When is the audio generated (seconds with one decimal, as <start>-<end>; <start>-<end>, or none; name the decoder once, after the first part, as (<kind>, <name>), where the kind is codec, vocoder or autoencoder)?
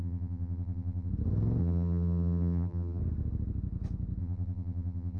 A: 0.0-1.1 (vocoder, BigVGAN v2); 1.6-3.0; 4.2-5.2